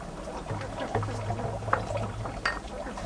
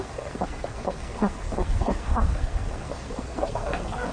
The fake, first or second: second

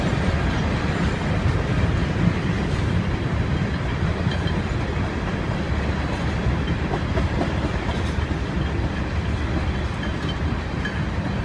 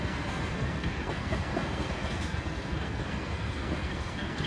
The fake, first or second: second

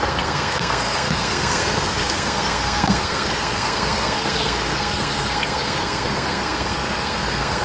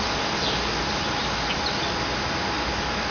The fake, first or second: first